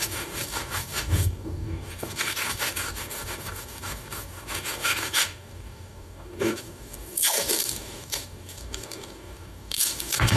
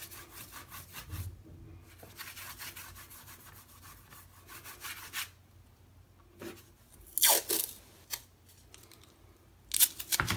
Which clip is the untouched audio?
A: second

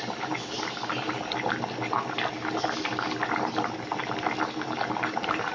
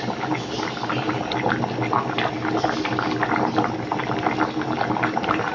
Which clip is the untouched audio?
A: second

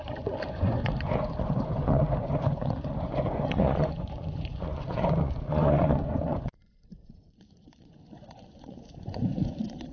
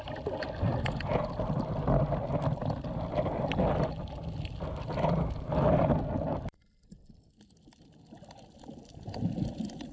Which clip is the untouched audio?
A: second